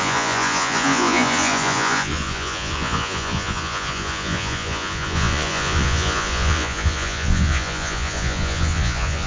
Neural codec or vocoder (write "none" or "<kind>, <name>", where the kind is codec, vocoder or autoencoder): vocoder, Vocos